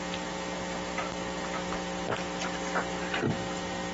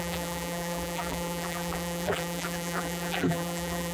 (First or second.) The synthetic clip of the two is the second